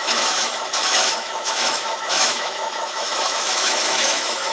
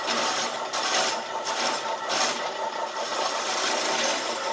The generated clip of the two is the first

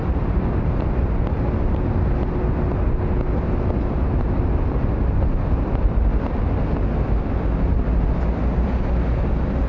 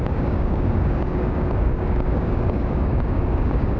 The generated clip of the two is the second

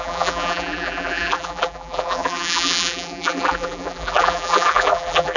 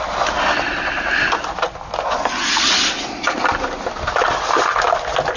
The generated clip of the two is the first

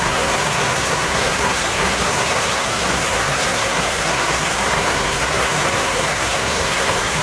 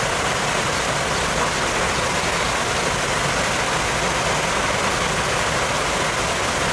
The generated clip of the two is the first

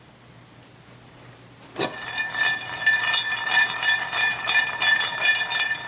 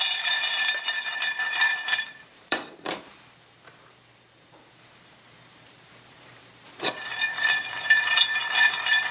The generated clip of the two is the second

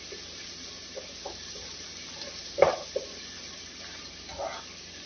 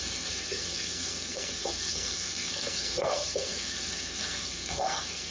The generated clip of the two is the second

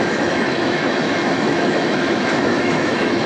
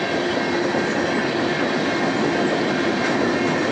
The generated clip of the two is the first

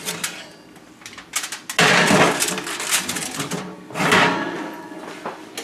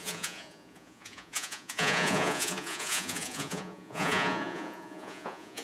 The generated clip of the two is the second